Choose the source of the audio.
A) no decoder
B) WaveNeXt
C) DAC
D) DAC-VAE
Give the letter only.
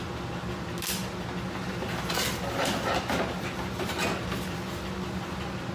A